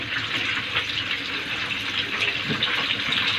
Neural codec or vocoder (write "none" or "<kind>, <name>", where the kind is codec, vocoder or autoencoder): none